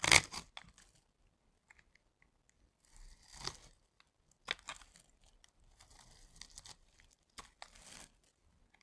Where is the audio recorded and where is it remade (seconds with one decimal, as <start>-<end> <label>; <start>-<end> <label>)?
0.0-8.8 recorded